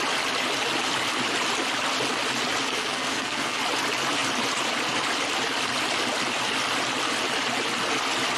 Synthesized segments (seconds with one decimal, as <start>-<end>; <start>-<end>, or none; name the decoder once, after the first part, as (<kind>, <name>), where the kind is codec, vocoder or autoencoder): 2.8-3.6 (codec, SNAC)